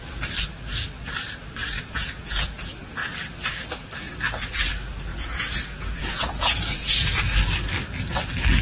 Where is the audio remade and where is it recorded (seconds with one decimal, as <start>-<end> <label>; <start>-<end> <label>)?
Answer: 0.0-1.6 recorded; 1.6-2.6 remade; 2.6-5.1 recorded; 5.1-7.2 remade; 7.2-8.6 recorded